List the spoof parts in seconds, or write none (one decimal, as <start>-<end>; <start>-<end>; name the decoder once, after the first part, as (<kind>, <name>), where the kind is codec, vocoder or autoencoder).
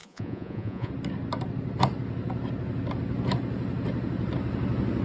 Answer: 0.0-0.9 (vocoder, Vocos)